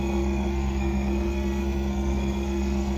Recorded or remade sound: remade